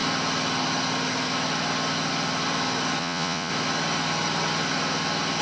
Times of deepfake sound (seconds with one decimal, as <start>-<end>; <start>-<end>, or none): 3.0-3.5